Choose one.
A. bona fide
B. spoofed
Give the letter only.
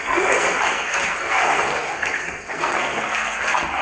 B